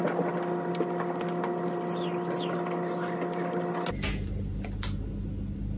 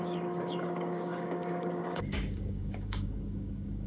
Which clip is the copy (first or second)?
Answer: second